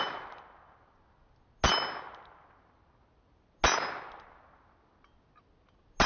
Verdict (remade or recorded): recorded